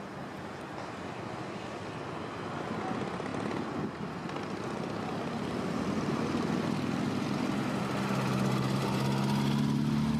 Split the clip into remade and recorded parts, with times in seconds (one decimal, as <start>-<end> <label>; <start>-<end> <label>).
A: 0.0-10.2 recorded